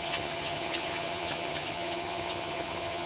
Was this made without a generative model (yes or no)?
no